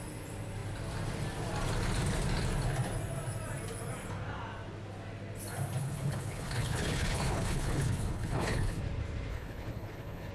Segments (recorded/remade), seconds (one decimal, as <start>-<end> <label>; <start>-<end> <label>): 0.0-5.8 recorded; 5.8-8.8 remade; 8.8-9.3 recorded; 9.3-10.3 remade